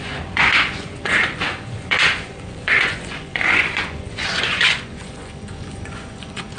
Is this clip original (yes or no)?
no